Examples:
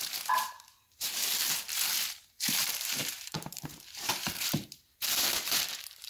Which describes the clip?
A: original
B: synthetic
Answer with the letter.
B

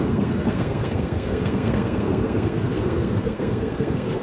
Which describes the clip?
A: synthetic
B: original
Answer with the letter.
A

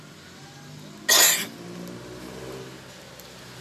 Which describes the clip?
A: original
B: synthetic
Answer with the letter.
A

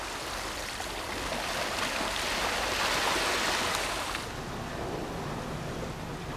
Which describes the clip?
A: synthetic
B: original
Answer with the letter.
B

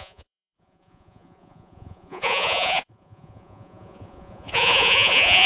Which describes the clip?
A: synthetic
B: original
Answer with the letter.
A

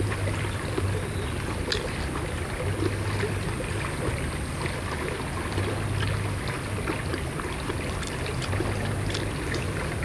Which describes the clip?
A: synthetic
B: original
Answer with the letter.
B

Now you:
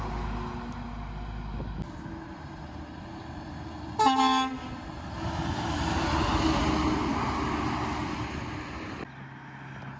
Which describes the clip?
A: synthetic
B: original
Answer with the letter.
B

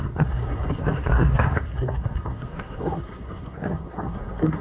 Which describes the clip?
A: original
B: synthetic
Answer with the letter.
B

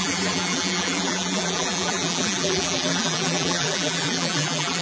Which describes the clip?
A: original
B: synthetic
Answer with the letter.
B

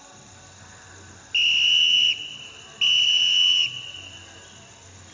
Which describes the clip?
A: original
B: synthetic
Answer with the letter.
A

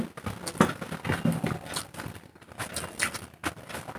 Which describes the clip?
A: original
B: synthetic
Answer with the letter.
A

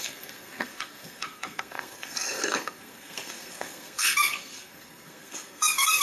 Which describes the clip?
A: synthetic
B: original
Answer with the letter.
A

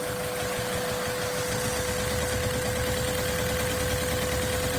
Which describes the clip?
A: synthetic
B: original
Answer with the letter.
B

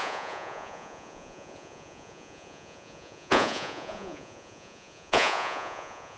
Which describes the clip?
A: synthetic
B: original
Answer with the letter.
A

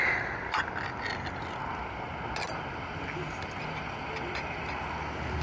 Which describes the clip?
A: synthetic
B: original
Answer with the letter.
B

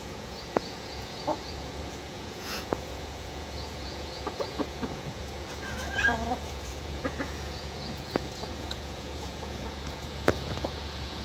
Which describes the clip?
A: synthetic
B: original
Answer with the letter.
A